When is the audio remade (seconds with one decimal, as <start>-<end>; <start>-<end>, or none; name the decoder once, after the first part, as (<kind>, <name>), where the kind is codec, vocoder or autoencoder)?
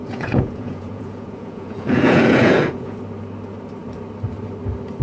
0.0-3.0 (vocoder, Vocos)